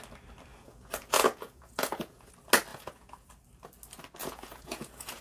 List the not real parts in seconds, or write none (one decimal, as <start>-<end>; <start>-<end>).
0.5-2.3; 2.7-3.3; 4.2-5.2